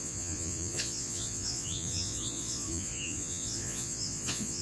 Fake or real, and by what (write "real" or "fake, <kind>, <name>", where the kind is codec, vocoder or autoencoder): fake, vocoder, Vocos